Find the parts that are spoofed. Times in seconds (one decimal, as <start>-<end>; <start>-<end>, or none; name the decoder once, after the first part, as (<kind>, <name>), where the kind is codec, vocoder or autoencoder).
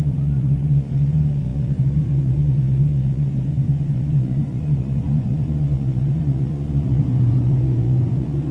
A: 0.0-8.5 (vocoder, Vocos)